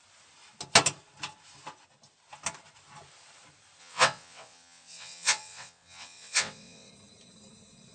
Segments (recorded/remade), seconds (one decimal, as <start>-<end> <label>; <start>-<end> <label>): 0.0-3.8 recorded; 3.8-6.9 remade; 6.9-7.9 recorded